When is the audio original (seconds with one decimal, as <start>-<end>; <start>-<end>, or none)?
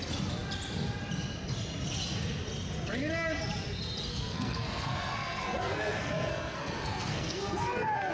0.0-4.1